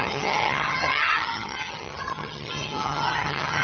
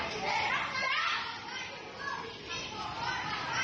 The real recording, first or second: second